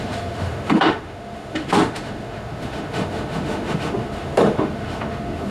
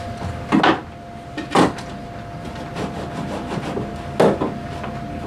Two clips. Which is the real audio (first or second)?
second